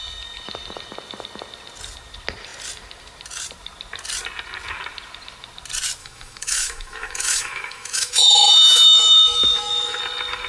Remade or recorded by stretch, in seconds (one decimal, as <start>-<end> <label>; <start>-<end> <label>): 0.0-6.0 recorded; 6.0-10.0 remade; 10.0-10.5 recorded